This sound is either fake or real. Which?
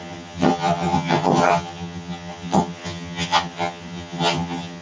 fake